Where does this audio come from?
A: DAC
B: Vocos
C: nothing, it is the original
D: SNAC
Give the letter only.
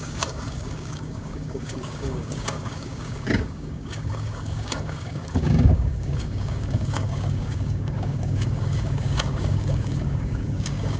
A